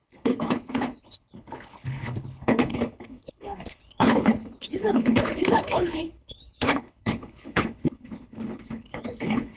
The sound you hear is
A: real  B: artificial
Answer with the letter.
B